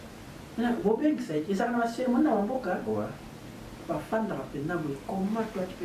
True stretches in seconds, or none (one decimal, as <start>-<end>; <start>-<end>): 0.0-1.0; 1.6-5.8